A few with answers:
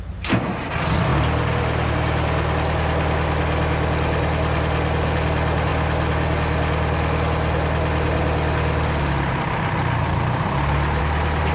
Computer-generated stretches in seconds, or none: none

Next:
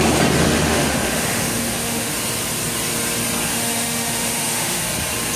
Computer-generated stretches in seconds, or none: 0.4-2.1 (autoencoder, DAC-VAE); 3.5-4.8

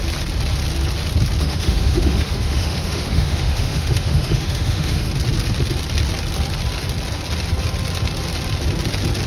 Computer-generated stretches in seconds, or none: 1.4-5.1 (autoencoder, DAC-VAE)